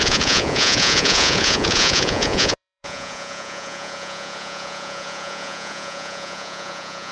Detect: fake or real fake